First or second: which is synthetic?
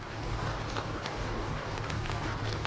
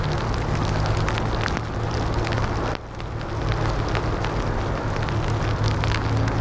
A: first